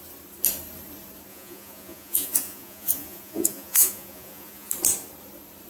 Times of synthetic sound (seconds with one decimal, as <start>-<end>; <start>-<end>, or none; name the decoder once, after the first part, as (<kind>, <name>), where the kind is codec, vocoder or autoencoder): 1.3-4.7 (vocoder, Vocos)